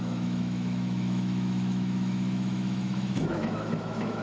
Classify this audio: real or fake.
fake